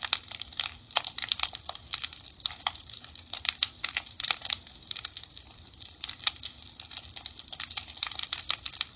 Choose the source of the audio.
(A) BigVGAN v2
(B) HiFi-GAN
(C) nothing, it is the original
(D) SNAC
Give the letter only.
A